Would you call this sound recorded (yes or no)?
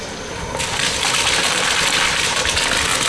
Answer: yes